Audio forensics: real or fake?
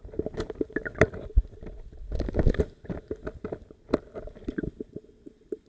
real